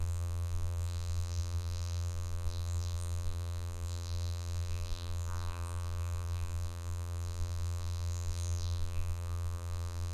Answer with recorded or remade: remade